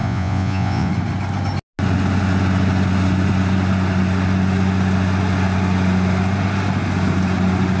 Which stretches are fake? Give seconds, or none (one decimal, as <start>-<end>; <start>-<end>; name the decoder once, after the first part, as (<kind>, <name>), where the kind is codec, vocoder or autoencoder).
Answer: 0.0-0.9 (vocoder, Vocos)